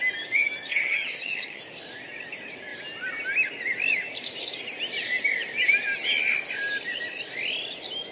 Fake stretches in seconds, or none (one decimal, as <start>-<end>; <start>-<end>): 0.7-1.6